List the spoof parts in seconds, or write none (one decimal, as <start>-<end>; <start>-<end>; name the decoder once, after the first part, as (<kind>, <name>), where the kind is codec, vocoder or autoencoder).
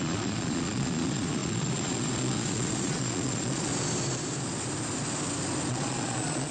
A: 0.0-3.7 (vocoder, Vocos); 5.7-6.5